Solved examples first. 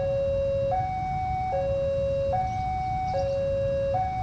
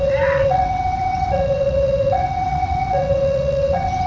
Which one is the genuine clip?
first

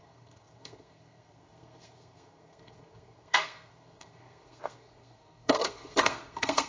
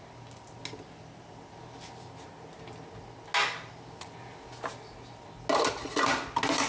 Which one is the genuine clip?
second